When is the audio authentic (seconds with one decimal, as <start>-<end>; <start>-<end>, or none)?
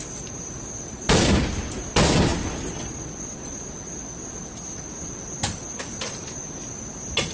0.0-7.3